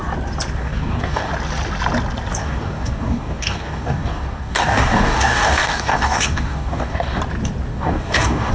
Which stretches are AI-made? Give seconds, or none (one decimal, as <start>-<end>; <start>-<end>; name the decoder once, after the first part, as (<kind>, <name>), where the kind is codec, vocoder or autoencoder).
0.6-1.3 (codec, DAC); 2.4-7.2; 7.7-8.5